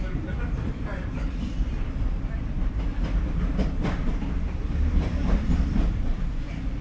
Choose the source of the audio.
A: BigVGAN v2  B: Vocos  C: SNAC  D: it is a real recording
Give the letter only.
A